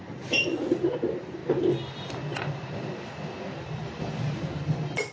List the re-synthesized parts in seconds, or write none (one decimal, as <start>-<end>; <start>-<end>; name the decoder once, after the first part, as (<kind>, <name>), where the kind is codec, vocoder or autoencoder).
none